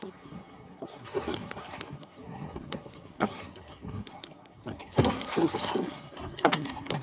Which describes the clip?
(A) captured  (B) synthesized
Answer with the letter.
B